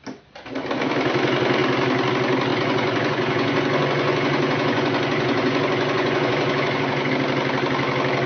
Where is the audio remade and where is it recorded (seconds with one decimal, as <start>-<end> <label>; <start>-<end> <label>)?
0.0-2.5 recorded; 2.5-7.1 remade; 7.1-8.3 recorded